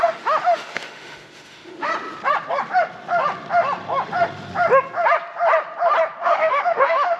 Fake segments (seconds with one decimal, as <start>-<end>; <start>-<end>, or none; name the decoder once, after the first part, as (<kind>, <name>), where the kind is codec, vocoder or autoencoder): 0.0-1.9 (autoencoder, DAC-VAE); 6.2-7.2